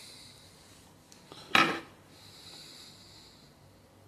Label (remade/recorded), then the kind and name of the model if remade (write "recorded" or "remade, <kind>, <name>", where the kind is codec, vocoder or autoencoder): recorded